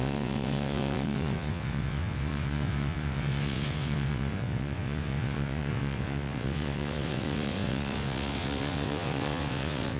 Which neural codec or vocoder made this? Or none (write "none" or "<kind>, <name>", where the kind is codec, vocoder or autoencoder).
vocoder, WaveNeXt